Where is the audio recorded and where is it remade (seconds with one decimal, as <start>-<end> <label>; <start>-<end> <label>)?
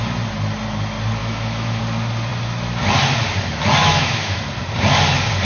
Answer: 0.0-1.2 recorded; 1.2-1.8 remade; 1.8-3.8 recorded; 3.8-4.4 remade; 4.4-5.4 recorded